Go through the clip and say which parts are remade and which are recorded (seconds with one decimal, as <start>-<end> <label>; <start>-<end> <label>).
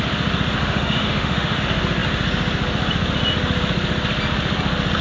0.0-0.6 recorded; 0.6-1.6 remade; 1.6-5.0 recorded